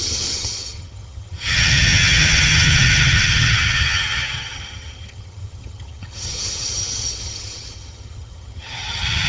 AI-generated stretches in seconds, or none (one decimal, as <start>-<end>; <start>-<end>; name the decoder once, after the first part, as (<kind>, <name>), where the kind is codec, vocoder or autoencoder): 0.0-9.3 (vocoder, HiFi-GAN)